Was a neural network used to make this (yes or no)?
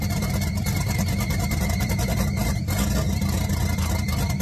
no